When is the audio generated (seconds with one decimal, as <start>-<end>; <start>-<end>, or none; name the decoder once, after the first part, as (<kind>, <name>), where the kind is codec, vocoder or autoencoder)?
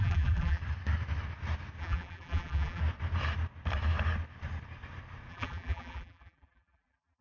0.0-0.6 (vocoder, BigVGAN v2); 1.8-2.8; 5.3-7.2